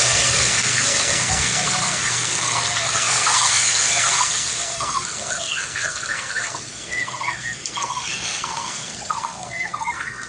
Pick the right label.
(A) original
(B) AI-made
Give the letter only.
B